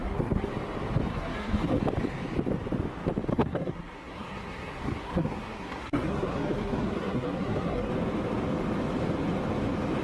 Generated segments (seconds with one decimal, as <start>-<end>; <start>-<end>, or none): 0.0-0.5; 1.1-1.8; 3.3-7.9